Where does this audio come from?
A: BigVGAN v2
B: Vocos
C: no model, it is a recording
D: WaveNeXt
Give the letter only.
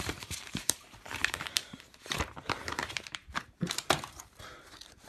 A